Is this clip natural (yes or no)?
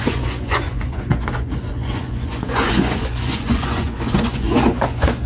no